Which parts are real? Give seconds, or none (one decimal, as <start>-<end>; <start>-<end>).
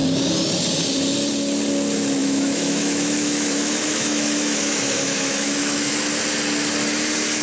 0.0-2.2; 5.9-7.4